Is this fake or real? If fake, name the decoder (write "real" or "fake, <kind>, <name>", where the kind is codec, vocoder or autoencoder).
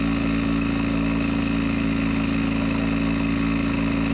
real